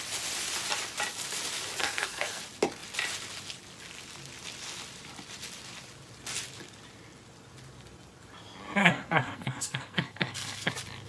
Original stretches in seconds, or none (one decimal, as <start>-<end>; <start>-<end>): 0.0-1.8; 2.4-8.8; 10.7-11.1